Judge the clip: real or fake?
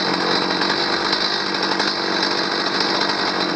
real